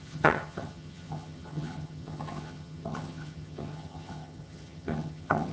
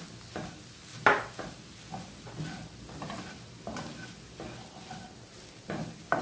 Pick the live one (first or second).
second